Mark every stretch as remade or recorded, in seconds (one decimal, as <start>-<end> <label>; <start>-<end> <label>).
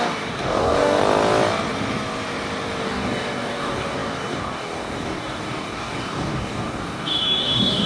0.0-1.0 remade; 1.0-2.8 recorded; 2.8-7.9 remade